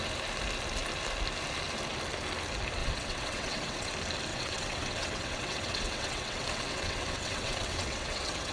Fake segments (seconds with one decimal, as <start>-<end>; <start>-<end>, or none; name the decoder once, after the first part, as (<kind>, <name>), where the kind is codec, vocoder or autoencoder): 2.8-3.9 (vocoder, WaveNeXt); 4.3-8.5